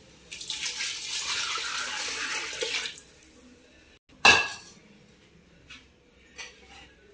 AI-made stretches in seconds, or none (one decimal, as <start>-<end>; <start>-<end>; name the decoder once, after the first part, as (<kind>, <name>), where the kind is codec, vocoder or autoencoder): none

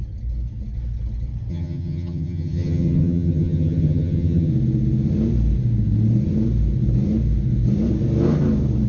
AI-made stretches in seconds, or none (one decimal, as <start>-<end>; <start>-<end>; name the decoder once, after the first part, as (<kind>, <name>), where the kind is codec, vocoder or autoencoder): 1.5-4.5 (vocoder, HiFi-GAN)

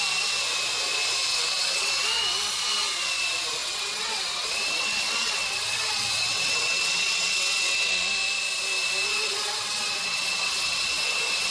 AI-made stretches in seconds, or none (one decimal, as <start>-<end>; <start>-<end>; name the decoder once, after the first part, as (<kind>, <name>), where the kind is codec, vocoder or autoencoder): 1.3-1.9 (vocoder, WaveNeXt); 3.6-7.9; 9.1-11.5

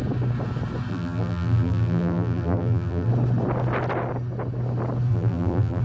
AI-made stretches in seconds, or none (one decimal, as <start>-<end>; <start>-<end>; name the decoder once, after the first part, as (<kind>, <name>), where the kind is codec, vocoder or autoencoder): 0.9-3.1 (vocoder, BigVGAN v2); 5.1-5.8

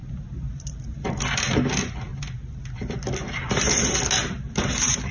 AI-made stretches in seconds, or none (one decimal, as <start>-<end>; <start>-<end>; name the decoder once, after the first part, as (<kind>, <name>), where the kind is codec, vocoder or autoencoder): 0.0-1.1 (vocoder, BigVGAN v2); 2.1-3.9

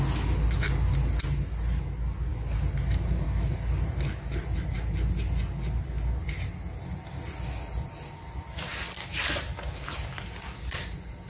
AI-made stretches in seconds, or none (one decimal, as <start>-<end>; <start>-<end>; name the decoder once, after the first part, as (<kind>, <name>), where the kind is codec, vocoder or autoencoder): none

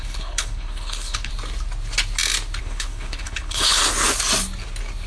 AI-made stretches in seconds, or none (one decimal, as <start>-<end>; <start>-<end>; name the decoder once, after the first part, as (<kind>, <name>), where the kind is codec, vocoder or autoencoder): 0.0-1.3 (codec, HILCodec); 2.6-3.8

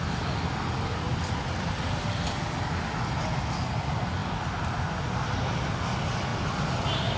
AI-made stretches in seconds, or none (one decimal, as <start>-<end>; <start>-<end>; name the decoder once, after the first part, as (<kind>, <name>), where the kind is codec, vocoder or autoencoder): none